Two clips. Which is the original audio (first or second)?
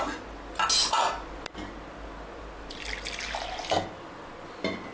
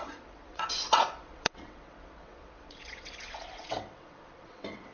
first